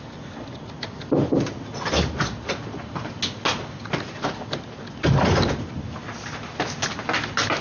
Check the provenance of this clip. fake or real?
real